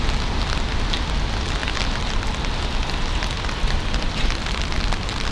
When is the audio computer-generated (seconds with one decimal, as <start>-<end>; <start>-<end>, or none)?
none